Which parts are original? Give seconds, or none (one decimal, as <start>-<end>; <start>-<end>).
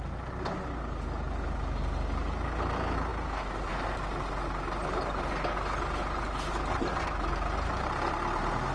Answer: 0.0-8.7